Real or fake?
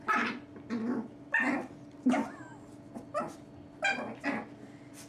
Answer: real